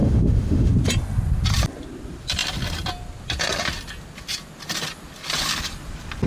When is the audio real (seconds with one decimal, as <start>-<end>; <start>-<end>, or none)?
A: 0.7-6.3